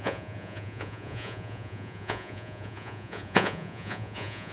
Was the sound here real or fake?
fake